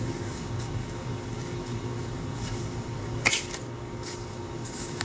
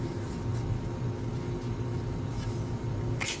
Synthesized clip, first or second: first